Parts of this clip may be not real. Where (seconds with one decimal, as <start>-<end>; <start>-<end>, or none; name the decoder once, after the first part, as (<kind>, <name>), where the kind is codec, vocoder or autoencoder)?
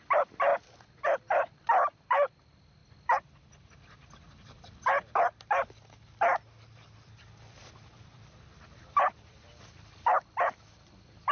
0.0-0.5 (vocoder, BigVGAN v2); 1.2-2.8; 4.3-11.3